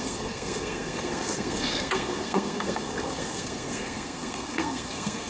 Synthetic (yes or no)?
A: yes